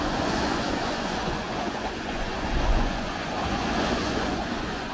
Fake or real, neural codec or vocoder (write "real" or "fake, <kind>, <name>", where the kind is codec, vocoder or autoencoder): fake, vocoder, Vocos